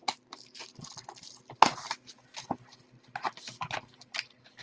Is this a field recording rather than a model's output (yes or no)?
yes